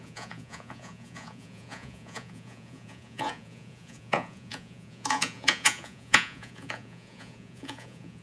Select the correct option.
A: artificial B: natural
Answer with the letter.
A